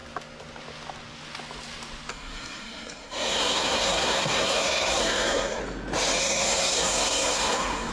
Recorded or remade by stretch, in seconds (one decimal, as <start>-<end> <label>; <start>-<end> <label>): 0.0-2.1 recorded; 2.1-5.6 remade; 5.6-6.2 recorded; 6.2-7.9 remade